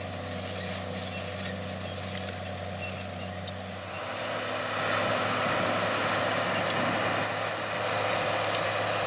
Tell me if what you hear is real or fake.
real